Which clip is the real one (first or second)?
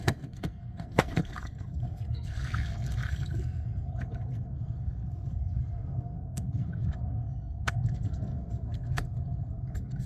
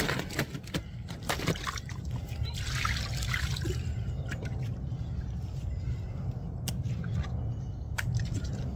second